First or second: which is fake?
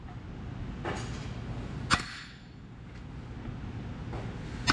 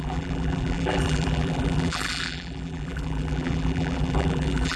second